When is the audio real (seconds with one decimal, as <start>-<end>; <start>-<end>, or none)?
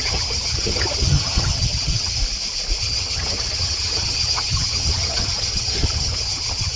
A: 2.2-2.8